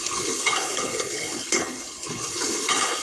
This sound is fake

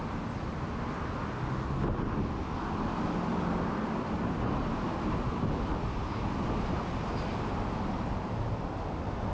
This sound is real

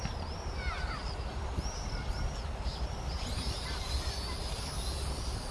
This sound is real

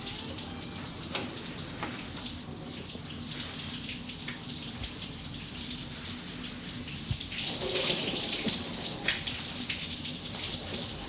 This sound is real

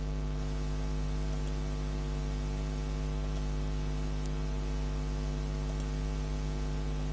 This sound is real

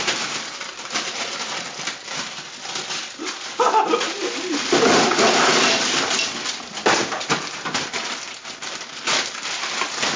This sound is real